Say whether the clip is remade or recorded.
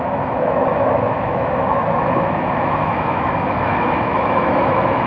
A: remade